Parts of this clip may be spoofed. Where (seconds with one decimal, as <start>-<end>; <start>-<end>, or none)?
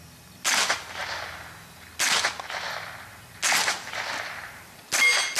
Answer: none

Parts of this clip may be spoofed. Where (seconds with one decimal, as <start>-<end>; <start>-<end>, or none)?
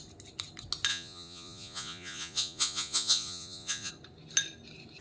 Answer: 0.9-3.9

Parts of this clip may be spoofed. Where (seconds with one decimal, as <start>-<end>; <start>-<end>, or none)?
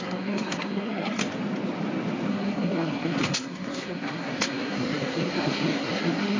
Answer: 0.0-1.2; 2.3-6.4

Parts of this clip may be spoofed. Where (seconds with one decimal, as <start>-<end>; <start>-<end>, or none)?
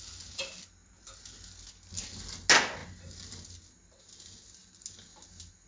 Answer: none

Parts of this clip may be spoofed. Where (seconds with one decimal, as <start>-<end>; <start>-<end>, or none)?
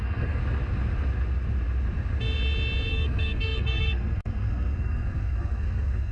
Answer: 0.0-0.4; 2.9-6.1